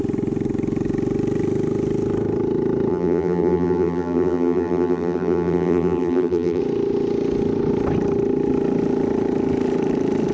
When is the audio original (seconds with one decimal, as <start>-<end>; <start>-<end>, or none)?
0.0-2.9; 6.6-10.3